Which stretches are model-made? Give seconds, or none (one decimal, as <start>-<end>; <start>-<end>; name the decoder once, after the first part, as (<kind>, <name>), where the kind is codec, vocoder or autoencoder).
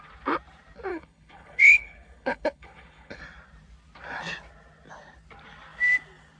0.9-3.2 (codec, HILCodec)